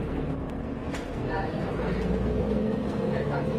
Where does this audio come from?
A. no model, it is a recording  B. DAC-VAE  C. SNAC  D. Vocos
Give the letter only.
C